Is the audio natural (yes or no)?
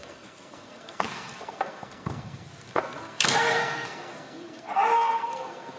no